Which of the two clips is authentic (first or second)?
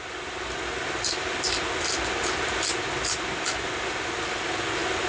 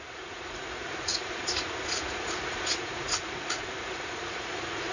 first